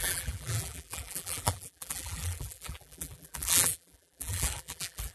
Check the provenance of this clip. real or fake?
fake